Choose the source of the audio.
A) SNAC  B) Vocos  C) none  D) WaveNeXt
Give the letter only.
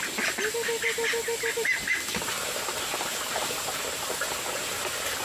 C